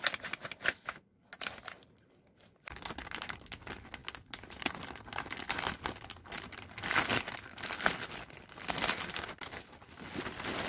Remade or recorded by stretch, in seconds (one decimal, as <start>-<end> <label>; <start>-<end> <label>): 0.0-10.7 recorded